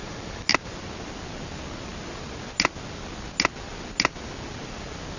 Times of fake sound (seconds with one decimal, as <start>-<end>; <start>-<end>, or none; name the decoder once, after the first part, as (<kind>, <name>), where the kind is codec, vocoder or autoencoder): 0.0-0.5 (vocoder, BigVGAN v2)